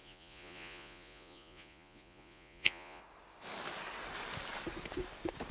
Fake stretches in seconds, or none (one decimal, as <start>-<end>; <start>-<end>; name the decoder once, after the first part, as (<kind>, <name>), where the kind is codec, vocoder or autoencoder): 0.0-3.0 (vocoder, Vocos)